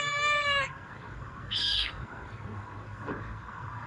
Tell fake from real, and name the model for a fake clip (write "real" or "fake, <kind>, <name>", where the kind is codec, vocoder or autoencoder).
fake, codec, SNAC